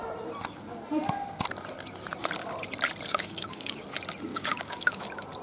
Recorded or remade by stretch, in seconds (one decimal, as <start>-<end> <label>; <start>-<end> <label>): 0.0-3.1 recorded; 3.1-3.8 remade; 3.8-4.3 recorded; 4.3-5.0 remade; 5.0-5.4 recorded